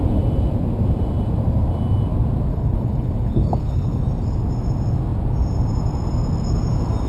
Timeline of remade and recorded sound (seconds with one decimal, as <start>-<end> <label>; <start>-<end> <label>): 0.0-2.5 recorded; 2.5-4.0 remade; 4.0-7.1 recorded